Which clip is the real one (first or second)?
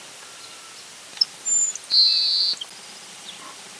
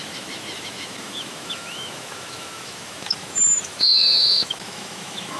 first